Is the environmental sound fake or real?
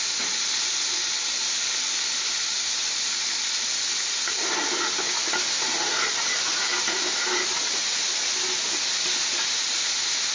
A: real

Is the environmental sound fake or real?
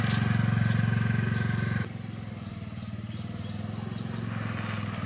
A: real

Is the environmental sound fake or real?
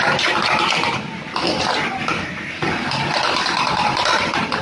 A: fake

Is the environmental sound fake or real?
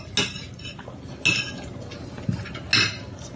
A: real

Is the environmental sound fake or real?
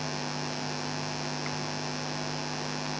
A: real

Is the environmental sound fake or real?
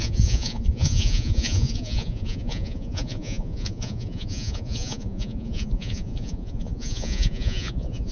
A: fake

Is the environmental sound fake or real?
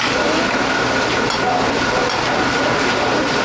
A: real